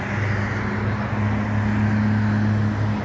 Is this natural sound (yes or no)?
yes